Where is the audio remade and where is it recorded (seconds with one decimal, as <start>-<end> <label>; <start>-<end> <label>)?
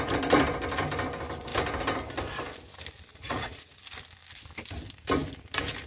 0.0-3.1 recorded; 3.1-3.8 remade; 3.8-5.9 recorded